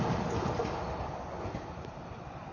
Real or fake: real